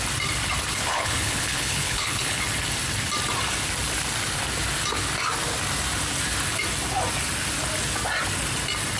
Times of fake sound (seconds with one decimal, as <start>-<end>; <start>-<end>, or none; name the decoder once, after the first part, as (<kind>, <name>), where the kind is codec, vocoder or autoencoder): 0.7-2.4 (codec, HILCodec)